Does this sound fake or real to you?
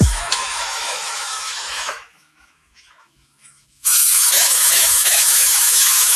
fake